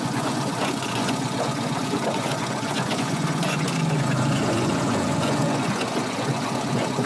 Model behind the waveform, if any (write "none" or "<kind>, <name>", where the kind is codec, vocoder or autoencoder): vocoder, Vocos